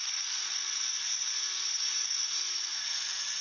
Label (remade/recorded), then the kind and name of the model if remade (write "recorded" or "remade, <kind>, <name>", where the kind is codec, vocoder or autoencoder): recorded